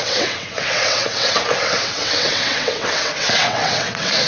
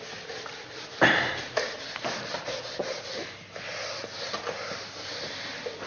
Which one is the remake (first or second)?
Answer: first